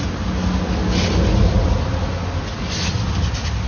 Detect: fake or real real